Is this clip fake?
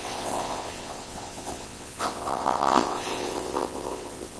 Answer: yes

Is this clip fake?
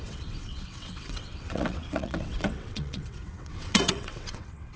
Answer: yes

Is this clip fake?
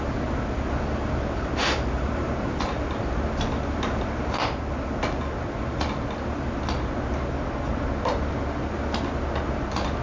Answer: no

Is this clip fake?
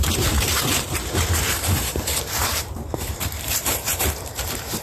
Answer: yes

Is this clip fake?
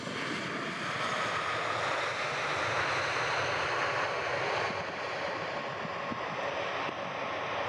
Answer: no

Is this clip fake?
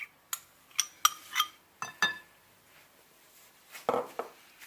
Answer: no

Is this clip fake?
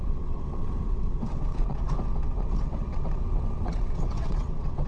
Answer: yes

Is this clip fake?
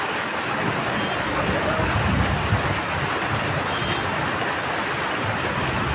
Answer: no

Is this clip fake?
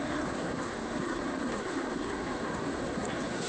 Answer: yes